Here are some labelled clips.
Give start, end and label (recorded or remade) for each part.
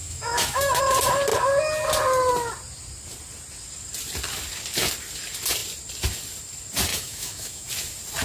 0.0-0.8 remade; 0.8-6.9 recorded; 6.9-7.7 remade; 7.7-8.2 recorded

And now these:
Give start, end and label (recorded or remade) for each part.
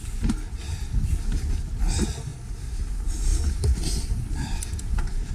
0.0-5.3 recorded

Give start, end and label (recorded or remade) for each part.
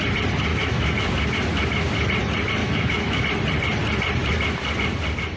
0.0-0.5 recorded; 0.5-1.1 remade; 1.1-2.6 recorded; 2.6-3.2 remade; 3.2-5.4 recorded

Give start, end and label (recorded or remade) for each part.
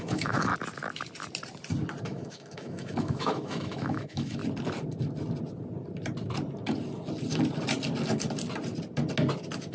0.0-0.5 remade; 0.5-2.0 recorded; 2.0-4.4 remade; 4.4-9.7 recorded